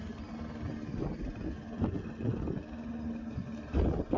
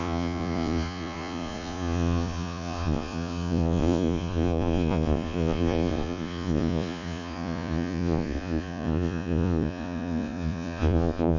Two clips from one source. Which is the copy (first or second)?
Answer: second